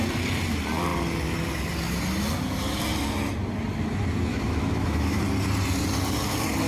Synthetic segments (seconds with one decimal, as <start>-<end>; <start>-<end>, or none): 4.3-5.2